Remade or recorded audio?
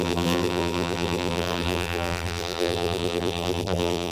remade